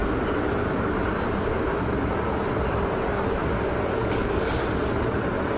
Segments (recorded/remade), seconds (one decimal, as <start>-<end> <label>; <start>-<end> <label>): 0.0-4.0 recorded; 4.0-4.6 remade; 4.6-5.6 recorded